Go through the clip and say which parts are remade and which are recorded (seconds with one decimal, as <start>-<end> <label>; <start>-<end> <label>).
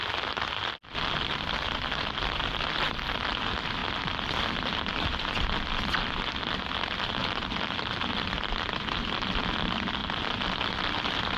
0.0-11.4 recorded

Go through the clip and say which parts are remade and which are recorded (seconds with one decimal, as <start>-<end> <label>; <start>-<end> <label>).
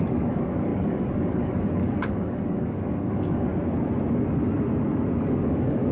0.0-3.5 remade; 3.5-5.2 recorded; 5.2-5.9 remade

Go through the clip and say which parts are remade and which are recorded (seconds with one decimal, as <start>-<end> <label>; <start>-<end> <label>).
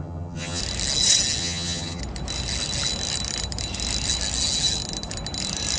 0.0-0.6 remade; 0.6-1.4 recorded; 1.4-2.0 remade; 2.0-5.8 recorded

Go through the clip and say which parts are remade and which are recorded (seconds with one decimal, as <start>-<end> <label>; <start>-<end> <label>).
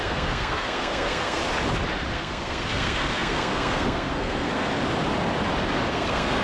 0.0-1.4 remade; 1.4-2.1 recorded; 2.1-4.7 remade; 4.7-5.9 recorded; 5.9-6.4 remade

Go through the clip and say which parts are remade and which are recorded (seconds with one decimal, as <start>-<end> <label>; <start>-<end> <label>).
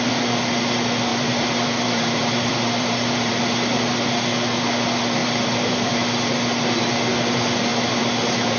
0.0-1.1 recorded; 1.1-3.3 remade; 3.3-5.2 recorded; 5.2-5.9 remade; 5.9-7.7 recorded; 7.7-8.6 remade